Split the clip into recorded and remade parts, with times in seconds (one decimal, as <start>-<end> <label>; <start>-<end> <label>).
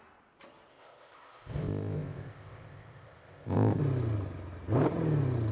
0.0-0.7 recorded; 0.7-3.8 remade; 3.8-5.5 recorded